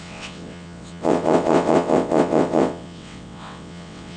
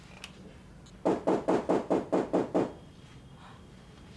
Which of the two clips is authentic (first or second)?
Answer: second